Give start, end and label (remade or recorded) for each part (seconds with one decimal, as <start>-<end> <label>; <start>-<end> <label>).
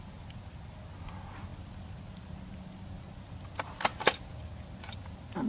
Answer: 0.0-5.5 recorded